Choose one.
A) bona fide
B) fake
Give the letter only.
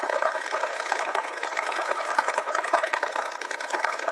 B